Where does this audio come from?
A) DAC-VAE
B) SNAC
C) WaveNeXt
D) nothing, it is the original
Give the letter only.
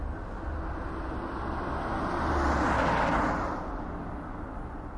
D